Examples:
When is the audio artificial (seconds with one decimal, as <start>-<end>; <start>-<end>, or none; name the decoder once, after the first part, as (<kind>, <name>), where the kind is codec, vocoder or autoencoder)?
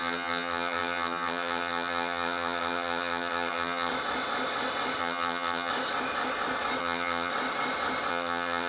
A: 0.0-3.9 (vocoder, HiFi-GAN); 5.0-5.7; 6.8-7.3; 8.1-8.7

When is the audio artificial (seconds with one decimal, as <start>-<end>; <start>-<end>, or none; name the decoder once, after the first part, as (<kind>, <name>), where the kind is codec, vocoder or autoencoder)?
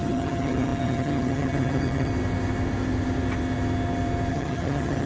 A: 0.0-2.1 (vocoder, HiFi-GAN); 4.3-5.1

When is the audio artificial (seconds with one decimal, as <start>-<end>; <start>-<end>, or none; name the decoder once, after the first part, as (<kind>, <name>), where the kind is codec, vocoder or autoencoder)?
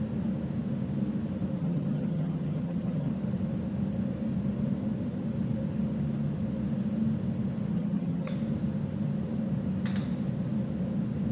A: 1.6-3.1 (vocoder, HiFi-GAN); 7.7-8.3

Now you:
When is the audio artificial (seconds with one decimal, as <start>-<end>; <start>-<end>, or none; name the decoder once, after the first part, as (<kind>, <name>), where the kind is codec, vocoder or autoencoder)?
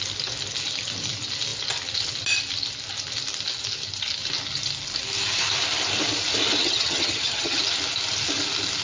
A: 6.6-7.6 (vocoder, HiFi-GAN)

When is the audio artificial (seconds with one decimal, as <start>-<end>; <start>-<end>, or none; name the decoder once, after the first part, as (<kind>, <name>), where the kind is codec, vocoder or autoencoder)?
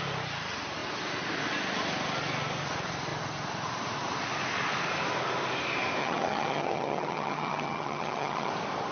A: 6.0-8.5 (vocoder, HiFi-GAN)